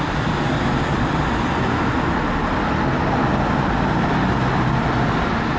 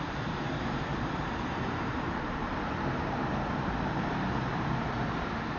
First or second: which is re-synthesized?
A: second